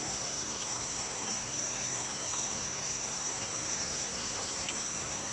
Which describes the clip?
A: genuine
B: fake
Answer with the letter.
B